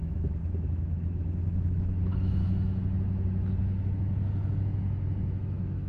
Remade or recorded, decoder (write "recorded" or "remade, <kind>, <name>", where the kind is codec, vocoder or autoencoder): remade, autoencoder, DAC-VAE